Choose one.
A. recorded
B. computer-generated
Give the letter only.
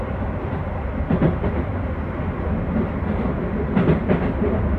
A